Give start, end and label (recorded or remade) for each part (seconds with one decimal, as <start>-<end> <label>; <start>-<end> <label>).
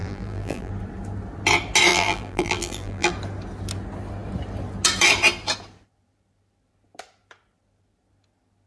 0.0-0.7 remade; 0.7-1.9 recorded; 1.9-3.1 remade; 3.1-8.7 recorded